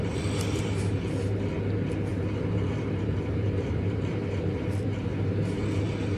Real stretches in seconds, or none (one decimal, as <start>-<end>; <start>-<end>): 0.0-2.1; 5.6-6.2